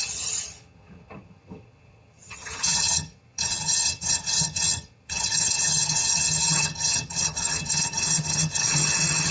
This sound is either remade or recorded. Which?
remade